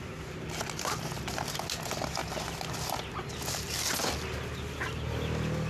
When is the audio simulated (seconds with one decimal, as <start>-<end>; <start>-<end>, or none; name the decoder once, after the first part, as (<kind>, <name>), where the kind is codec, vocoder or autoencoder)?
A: none